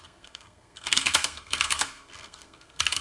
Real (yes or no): no